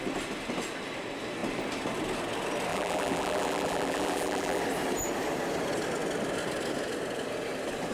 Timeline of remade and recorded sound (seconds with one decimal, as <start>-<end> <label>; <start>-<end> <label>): 0.0-2.7 recorded; 2.7-4.6 remade; 4.6-7.9 recorded